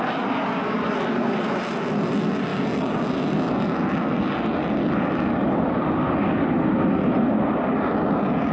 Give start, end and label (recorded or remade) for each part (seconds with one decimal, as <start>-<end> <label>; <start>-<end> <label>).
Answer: 0.0-8.5 recorded